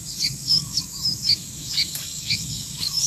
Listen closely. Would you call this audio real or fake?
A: fake